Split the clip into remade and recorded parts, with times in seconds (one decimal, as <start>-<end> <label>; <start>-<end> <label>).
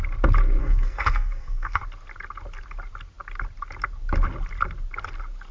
0.0-0.6 recorded; 0.6-1.8 remade; 1.8-5.5 recorded